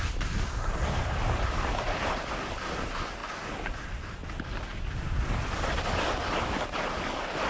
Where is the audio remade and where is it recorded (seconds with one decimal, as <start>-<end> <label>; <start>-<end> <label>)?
0.0-3.2 remade; 3.2-6.7 recorded; 6.7-7.5 remade